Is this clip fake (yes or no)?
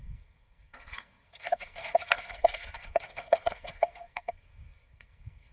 yes